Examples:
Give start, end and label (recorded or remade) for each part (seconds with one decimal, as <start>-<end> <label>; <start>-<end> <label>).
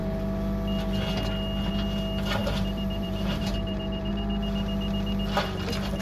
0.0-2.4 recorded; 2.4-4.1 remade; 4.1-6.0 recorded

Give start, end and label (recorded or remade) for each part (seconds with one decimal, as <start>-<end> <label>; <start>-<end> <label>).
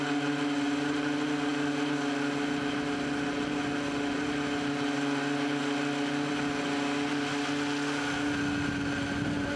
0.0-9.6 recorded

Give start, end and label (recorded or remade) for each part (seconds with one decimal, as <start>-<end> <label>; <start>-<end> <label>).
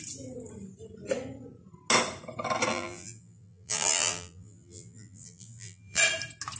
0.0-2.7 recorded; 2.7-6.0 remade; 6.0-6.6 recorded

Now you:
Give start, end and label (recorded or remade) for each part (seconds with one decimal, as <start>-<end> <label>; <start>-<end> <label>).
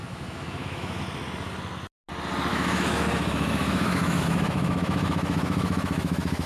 0.0-1.0 remade; 1.0-2.5 recorded; 2.5-6.5 remade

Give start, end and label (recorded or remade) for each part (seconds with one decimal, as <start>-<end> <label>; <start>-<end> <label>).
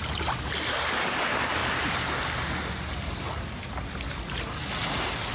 0.0-5.3 recorded